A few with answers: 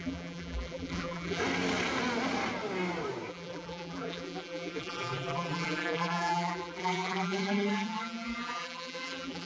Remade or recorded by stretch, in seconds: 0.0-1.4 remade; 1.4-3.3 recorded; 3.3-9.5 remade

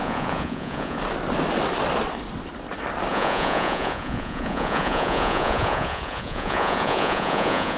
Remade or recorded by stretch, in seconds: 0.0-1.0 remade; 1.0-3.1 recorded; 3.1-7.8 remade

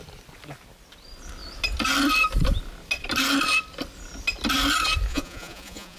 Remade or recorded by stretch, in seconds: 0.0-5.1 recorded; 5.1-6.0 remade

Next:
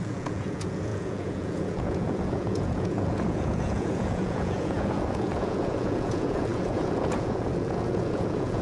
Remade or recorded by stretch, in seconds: 0.0-8.6 remade

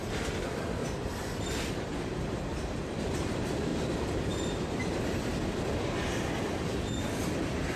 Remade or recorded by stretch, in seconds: 0.0-0.8 remade; 0.8-1.7 recorded; 1.7-3.7 remade; 3.7-4.4 recorded; 4.4-7.8 remade